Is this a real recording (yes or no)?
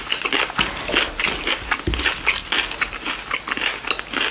yes